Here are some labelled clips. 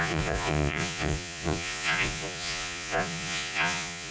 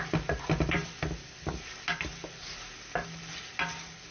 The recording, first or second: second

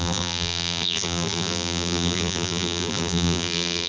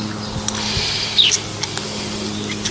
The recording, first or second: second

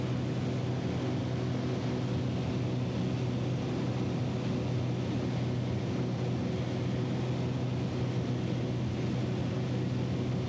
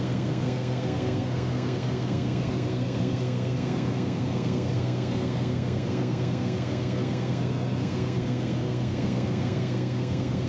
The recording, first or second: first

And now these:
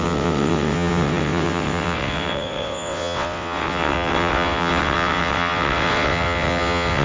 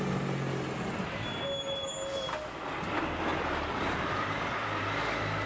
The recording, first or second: second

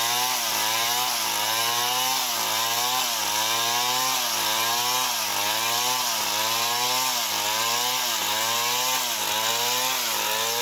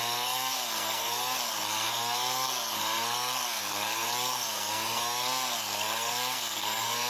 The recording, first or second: first